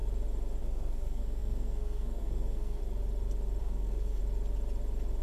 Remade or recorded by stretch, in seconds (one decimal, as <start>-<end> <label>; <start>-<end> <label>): 0.0-0.6 recorded; 0.6-2.8 remade; 2.8-3.6 recorded; 3.6-4.2 remade; 4.2-5.2 recorded